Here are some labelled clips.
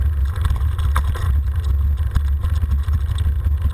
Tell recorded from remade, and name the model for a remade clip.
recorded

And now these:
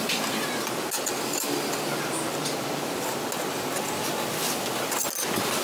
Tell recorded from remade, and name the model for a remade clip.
recorded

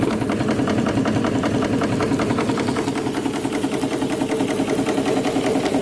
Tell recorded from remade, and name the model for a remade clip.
recorded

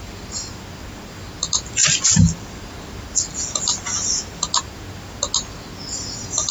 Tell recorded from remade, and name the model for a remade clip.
recorded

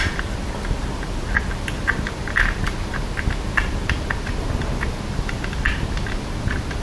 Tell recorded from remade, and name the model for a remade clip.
recorded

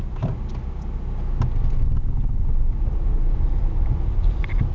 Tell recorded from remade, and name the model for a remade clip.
recorded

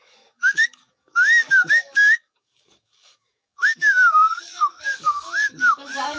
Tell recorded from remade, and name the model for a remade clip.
remade, codec, DAC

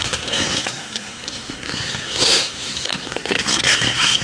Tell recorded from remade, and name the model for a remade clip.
remade, codec, SNAC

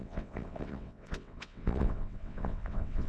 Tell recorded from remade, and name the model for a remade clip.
remade, vocoder, WaveNeXt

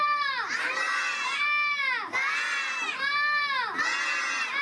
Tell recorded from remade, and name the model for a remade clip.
recorded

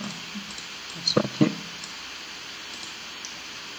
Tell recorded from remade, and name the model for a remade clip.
recorded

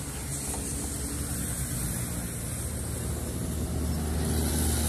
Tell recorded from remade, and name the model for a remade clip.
recorded